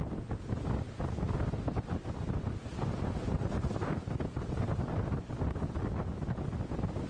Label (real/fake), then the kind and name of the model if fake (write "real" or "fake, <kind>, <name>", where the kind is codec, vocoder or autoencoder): real